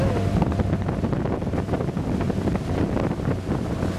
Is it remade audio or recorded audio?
recorded